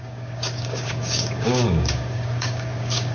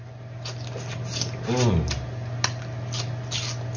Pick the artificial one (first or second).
first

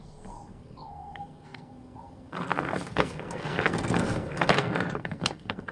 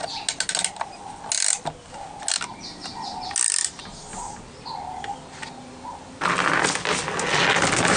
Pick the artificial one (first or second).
first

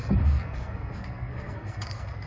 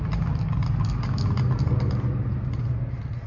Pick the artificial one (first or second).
first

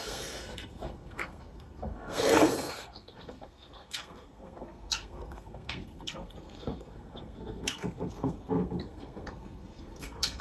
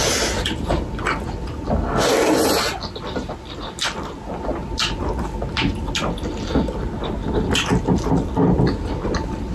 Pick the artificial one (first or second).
first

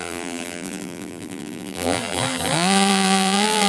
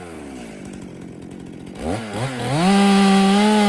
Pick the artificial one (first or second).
first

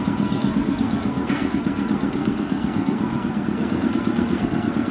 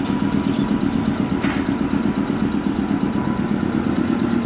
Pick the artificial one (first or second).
first